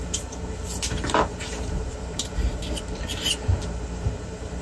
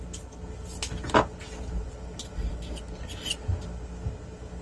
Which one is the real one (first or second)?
second